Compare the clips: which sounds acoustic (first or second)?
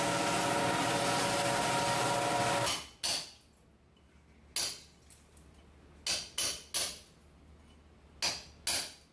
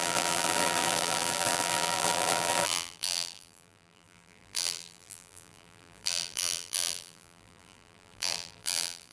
first